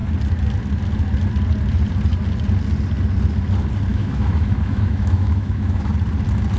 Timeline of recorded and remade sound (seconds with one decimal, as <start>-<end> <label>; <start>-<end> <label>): 0.0-3.9 recorded; 3.9-5.9 remade; 5.9-6.6 recorded